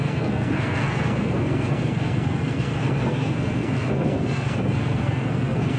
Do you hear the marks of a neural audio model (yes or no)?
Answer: yes